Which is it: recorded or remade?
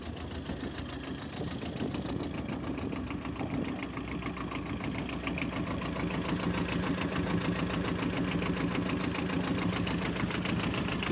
recorded